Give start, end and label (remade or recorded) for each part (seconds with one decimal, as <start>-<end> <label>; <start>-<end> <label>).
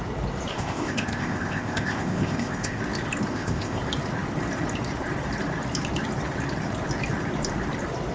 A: 0.0-0.5 recorded; 0.5-2.8 remade; 2.8-3.3 recorded; 3.3-3.8 remade; 3.8-8.1 recorded